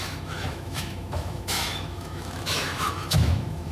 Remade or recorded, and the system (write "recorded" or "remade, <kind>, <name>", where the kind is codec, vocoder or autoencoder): remade, autoencoder, DAC-VAE